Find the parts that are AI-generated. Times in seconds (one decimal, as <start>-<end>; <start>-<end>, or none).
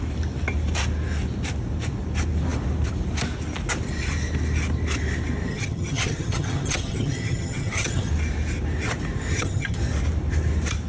5.5-8.1; 9.3-9.8